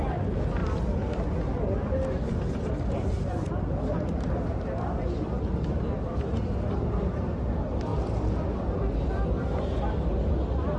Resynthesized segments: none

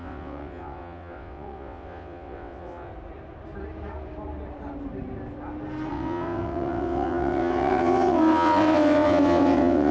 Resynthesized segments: 0.0-2.9 (vocoder, WaveNeXt); 5.9-9.9

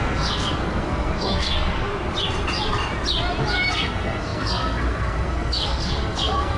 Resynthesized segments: 0.0-1.9 (codec, SNAC); 3.7-6.6

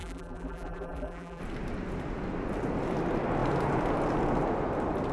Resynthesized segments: 0.0-1.4 (vocoder, BigVGAN v2)

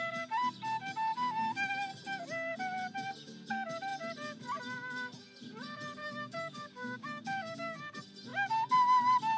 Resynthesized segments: 1.1-1.7 (codec, DAC); 6.0-7.8

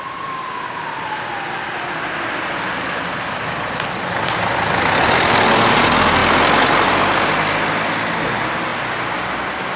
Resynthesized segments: none